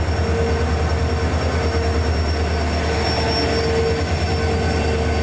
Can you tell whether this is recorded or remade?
recorded